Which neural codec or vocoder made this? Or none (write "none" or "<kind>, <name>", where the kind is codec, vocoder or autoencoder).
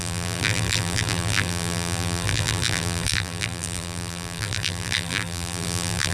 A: vocoder, BigVGAN v2